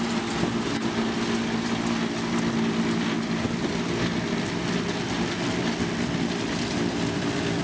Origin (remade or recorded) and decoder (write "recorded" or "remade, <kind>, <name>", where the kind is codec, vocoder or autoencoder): recorded